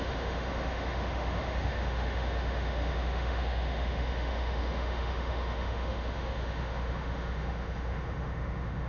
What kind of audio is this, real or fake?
fake